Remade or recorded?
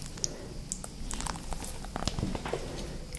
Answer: recorded